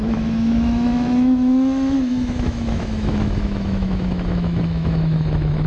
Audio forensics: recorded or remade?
remade